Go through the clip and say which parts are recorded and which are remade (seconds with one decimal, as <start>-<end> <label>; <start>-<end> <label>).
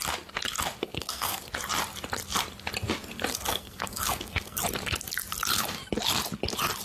0.0-0.8 recorded; 0.8-1.4 remade; 1.4-3.3 recorded; 3.3-4.6 remade; 4.6-6.8 recorded